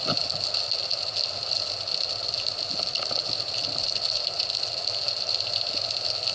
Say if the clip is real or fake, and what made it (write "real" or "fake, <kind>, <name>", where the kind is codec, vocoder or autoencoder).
real